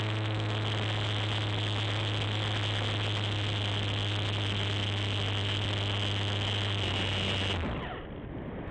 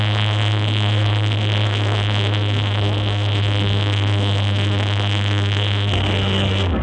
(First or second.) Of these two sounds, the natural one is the first